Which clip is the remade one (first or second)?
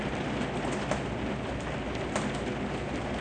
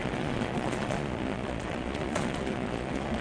second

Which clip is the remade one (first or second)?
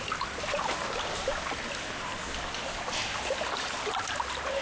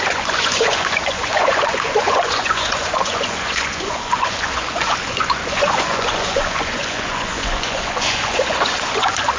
second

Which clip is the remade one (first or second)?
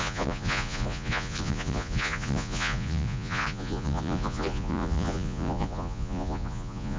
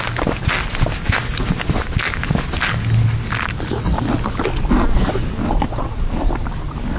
first